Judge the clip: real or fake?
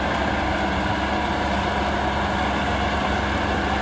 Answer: real